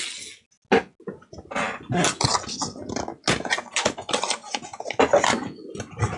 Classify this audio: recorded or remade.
recorded